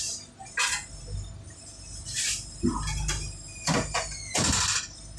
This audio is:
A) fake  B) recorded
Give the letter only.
B